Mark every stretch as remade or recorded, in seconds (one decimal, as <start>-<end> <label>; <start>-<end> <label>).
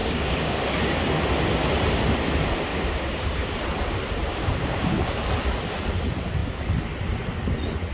0.0-0.8 remade; 0.8-2.7 recorded; 2.7-3.6 remade; 3.6-4.3 recorded; 4.3-5.3 remade; 5.3-7.9 recorded